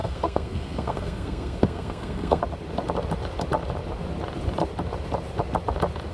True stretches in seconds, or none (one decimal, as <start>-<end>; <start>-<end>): 2.4-6.1